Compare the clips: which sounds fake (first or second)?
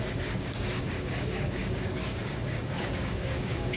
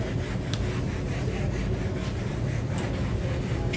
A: first